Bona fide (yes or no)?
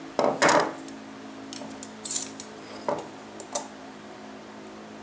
yes